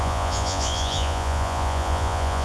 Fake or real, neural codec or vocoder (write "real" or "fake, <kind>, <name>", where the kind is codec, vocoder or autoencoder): fake, vocoder, Vocos